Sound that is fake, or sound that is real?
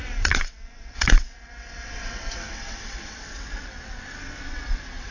fake